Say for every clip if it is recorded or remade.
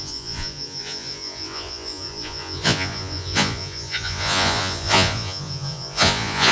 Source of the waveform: remade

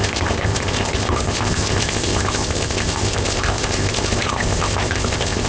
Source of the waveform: remade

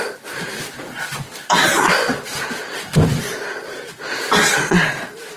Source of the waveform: recorded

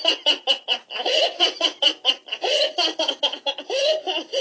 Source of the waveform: recorded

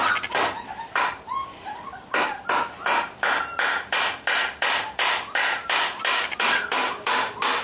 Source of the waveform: recorded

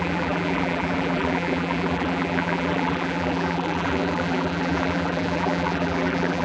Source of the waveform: remade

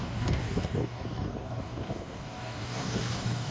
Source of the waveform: remade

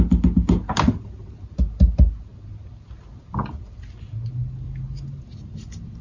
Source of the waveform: recorded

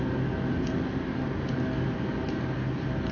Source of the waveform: recorded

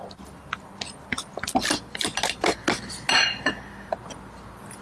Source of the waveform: recorded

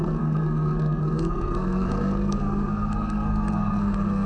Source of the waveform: remade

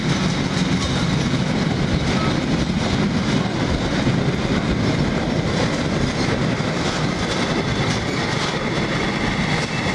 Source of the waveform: recorded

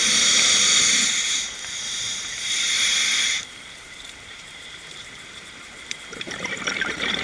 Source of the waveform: remade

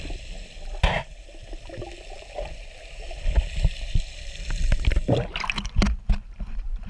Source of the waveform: recorded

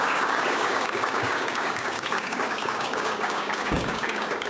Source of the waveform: remade